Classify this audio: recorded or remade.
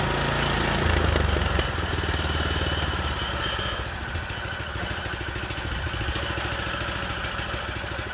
recorded